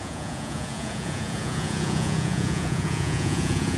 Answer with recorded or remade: remade